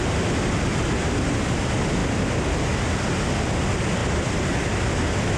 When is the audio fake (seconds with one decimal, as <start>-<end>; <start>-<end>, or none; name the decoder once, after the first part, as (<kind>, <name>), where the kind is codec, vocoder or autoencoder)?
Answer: 0.7-1.3 (vocoder, BigVGAN v2); 2.0-3.1; 4.0-4.7